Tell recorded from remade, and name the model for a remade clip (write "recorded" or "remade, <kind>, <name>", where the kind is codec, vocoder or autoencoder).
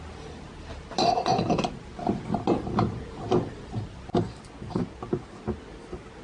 recorded